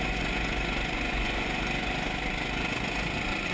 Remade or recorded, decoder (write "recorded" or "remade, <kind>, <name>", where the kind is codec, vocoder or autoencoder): remade, vocoder, Vocos